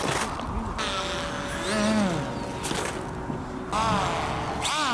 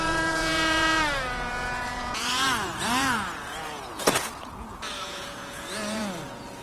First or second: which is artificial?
second